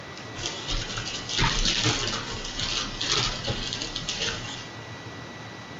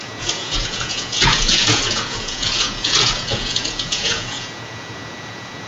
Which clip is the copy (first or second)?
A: second